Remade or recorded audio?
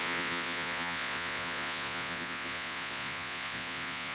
remade